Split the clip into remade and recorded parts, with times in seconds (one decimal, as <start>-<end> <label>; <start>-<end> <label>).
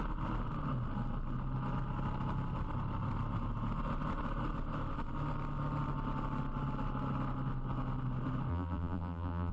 0.0-8.5 recorded; 8.5-9.5 remade